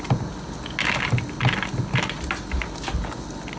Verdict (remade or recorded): recorded